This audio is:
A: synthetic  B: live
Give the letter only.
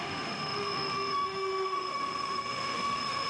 A